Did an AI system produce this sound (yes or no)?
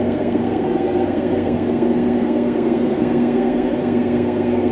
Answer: yes